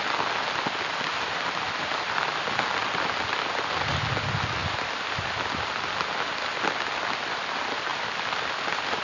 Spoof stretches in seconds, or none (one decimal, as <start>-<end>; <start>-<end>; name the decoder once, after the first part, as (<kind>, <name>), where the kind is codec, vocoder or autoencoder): 7.9-8.6 (vocoder, BigVGAN v2)